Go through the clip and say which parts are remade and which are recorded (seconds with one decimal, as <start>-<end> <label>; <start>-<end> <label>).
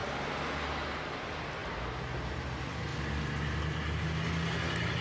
0.0-5.0 recorded